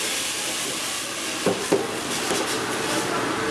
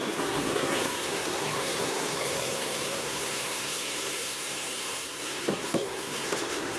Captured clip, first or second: first